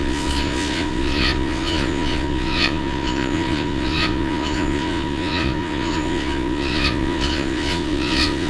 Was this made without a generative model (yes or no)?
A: no